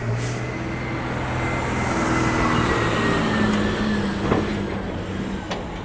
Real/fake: real